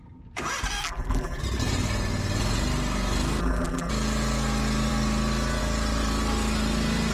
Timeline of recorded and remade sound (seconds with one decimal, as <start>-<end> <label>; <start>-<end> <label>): 0.0-0.8 recorded; 0.8-1.4 remade; 1.4-3.4 recorded; 3.4-3.9 remade; 3.9-7.1 recorded